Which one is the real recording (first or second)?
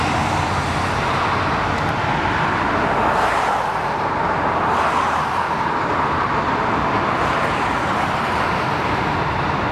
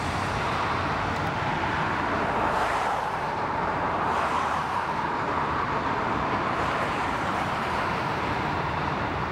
first